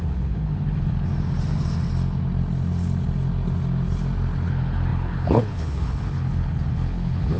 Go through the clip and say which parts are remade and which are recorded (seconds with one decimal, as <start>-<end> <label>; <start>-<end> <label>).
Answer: 0.0-1.1 remade; 1.1-4.5 recorded; 4.5-7.4 remade